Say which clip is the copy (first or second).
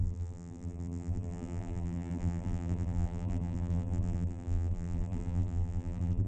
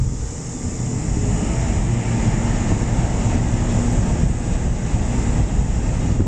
first